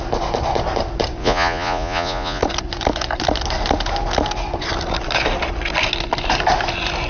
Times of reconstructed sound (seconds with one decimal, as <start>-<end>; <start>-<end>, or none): 1.2-2.4